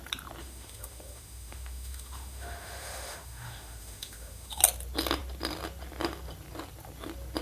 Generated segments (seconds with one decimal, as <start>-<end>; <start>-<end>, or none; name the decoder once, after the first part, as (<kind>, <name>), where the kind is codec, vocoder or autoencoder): 0.4-4.6 (autoencoder, DAC-VAE)